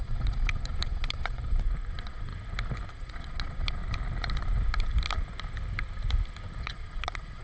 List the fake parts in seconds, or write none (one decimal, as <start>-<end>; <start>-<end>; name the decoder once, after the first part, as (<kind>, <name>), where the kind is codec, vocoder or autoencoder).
0.0-1.4 (vocoder, Vocos); 1.9-2.3; 2.9-3.8; 6.6-7.4